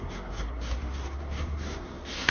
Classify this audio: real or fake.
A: fake